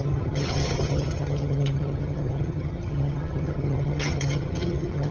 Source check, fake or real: fake